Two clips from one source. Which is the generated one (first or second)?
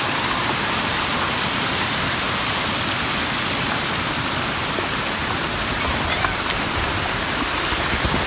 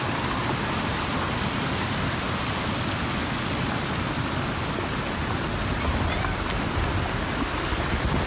first